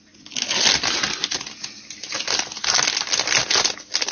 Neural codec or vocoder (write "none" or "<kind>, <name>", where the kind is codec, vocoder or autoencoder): none